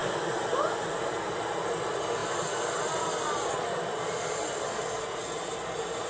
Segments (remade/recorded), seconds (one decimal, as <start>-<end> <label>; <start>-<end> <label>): 0.0-6.1 recorded